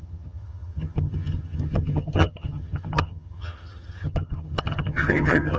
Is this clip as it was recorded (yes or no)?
no